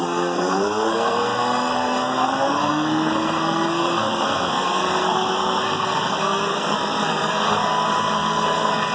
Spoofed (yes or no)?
yes